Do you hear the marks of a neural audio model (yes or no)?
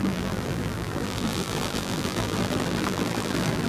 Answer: yes